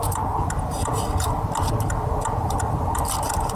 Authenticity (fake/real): real